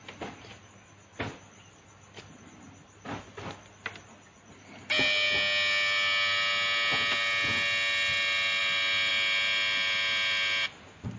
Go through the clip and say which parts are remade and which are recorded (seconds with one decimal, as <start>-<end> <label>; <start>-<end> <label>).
0.0-11.2 recorded